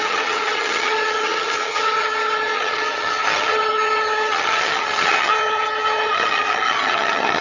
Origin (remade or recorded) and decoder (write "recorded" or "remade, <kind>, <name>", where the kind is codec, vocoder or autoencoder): remade, vocoder, HiFi-GAN